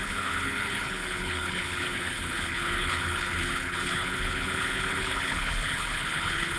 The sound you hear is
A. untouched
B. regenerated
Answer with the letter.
B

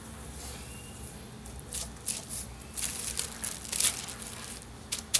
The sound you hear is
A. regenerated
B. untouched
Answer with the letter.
B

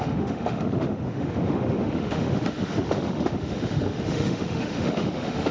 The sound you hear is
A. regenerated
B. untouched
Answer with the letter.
A